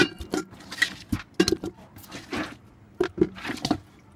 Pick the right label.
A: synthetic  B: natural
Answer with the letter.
B